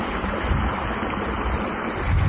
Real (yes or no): yes